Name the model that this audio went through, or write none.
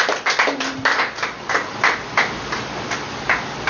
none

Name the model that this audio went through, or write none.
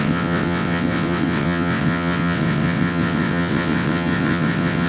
vocoder, WaveNeXt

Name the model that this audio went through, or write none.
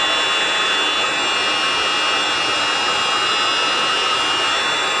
none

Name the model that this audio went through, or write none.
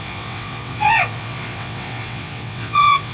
vocoder, WaveNeXt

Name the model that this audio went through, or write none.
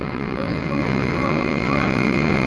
vocoder, WaveNeXt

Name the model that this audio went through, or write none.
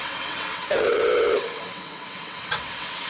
vocoder, WaveNeXt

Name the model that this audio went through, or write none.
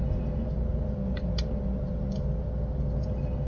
none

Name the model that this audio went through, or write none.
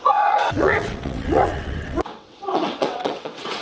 vocoder, WaveNeXt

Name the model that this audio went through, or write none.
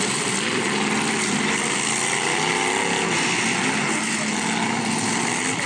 none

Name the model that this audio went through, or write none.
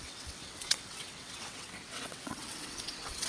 vocoder, WaveNeXt